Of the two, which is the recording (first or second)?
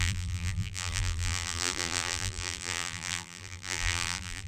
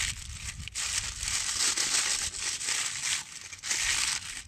second